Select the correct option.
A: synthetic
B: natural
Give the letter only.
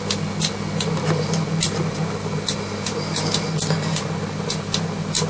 B